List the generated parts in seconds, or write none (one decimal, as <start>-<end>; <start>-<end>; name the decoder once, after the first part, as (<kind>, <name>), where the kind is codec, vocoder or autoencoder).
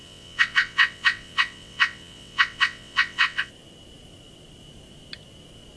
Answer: 0.0-3.5 (vocoder, WaveNeXt)